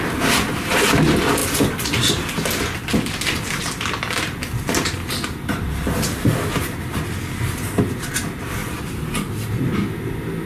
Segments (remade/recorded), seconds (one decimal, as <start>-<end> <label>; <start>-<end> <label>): 0.0-2.9 recorded; 2.9-6.8 remade; 6.8-8.6 recorded; 8.6-9.6 remade; 9.6-10.5 recorded